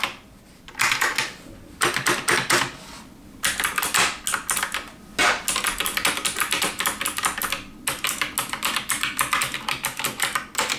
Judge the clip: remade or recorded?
recorded